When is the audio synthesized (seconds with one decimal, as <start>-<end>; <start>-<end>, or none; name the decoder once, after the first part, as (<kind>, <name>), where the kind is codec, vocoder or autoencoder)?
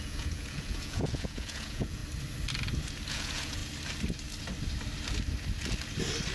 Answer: 0.0-2.0 (vocoder, Vocos); 3.1-3.6